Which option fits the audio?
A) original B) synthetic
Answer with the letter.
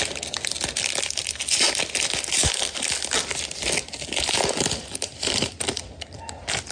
A